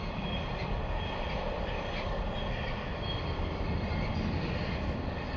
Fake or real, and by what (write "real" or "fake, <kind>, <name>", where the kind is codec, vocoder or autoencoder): fake, vocoder, BigVGAN v2